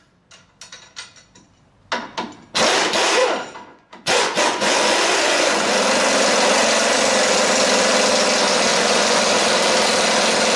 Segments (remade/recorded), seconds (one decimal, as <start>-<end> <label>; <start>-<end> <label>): 0.0-3.7 recorded; 3.7-5.7 remade; 5.7-8.7 recorded; 8.7-9.2 remade; 9.2-10.6 recorded